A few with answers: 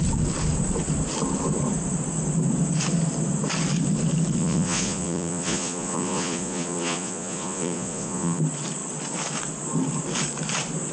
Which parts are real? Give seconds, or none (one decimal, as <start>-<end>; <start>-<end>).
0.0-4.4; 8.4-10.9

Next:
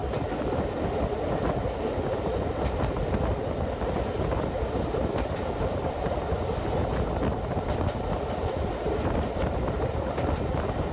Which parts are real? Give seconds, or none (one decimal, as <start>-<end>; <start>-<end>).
0.0-10.9

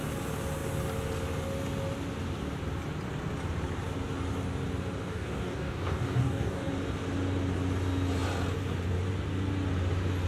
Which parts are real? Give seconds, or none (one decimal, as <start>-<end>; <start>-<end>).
0.0-5.0; 6.7-10.3